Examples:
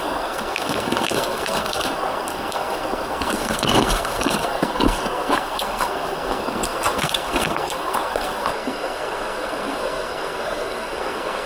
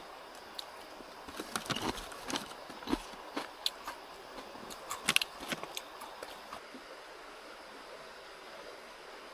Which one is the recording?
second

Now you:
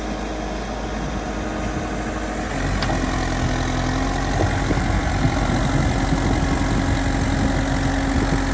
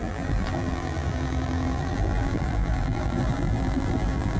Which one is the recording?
first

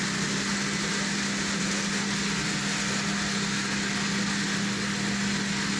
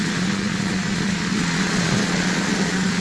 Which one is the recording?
first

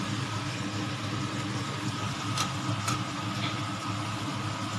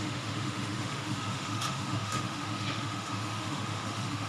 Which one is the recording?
first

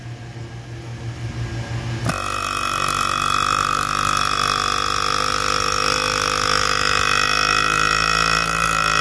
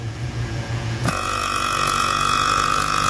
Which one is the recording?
first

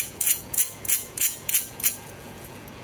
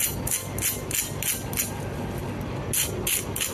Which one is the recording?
second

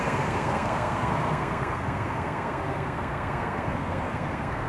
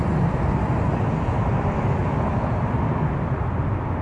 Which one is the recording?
second